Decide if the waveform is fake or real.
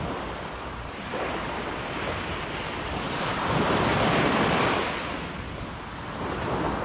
real